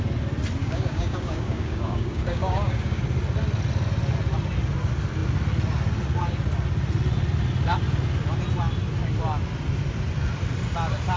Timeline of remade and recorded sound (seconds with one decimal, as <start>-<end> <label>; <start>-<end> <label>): 0.0-0.6 recorded; 0.6-3.0 remade; 3.0-11.2 recorded